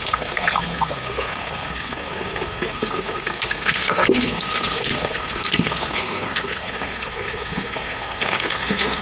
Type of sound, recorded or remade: remade